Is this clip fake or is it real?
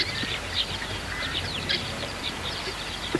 fake